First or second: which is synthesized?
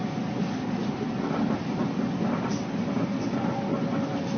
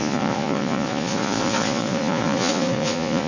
second